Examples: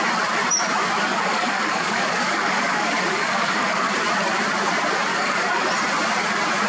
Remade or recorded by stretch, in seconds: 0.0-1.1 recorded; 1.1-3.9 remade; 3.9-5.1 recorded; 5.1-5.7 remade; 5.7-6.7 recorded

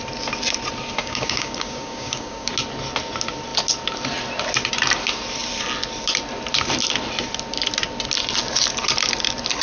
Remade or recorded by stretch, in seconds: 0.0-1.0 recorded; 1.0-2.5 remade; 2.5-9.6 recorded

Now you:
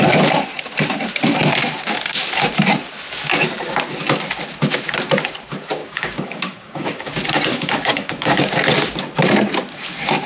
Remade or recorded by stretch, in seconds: 0.0-5.8 recorded; 5.8-7.1 remade; 7.1-7.5 recorded; 7.5-8.4 remade; 8.4-10.3 recorded

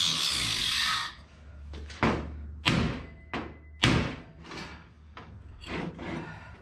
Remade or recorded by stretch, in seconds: 0.0-0.6 recorded; 0.6-2.1 remade; 2.1-4.8 recorded; 4.8-5.9 remade; 5.9-6.6 recorded